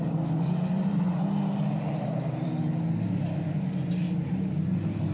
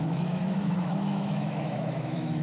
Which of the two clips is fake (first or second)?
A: second